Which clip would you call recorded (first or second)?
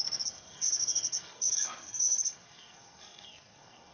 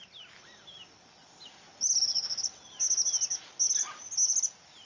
second